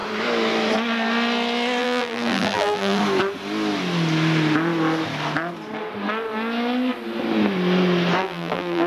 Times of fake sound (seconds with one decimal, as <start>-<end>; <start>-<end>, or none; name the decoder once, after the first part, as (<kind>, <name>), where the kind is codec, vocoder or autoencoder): 1.8-3.0 (vocoder, BigVGAN v2); 8.2-8.9